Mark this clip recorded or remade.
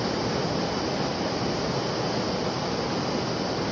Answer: recorded